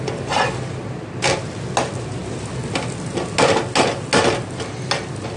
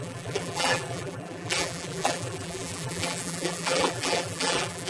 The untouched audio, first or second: first